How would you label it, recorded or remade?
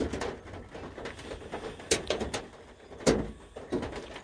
recorded